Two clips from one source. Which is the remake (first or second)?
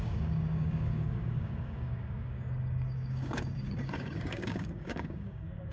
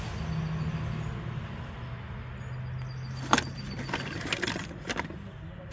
first